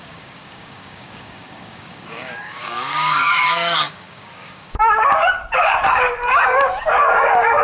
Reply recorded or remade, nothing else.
remade